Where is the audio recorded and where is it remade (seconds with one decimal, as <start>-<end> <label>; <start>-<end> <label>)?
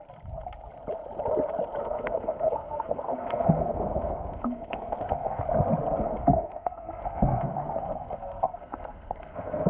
0.0-1.8 recorded; 1.8-5.4 remade; 5.4-6.0 recorded; 6.0-9.7 remade